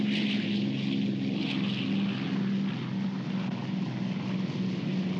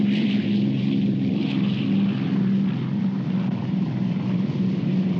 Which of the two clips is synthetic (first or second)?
second